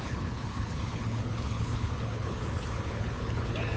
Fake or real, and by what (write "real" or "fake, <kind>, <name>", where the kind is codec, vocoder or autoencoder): fake, codec, HILCodec